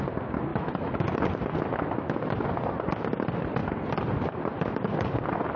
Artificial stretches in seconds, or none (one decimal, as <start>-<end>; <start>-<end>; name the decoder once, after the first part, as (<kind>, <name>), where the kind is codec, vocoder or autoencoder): 0.5-1.2 (autoencoder, DAC-VAE)